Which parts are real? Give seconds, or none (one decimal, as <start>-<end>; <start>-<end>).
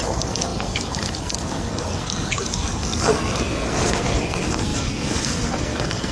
none